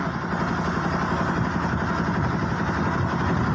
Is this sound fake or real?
real